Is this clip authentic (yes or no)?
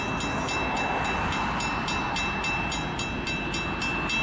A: yes